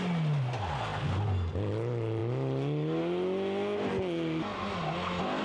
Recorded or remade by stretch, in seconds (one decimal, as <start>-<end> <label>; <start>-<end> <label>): 0.0-5.4 recorded